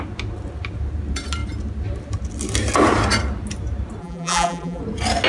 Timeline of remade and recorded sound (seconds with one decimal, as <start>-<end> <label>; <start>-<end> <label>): 0.0-4.0 recorded; 4.0-4.8 remade; 4.8-5.3 recorded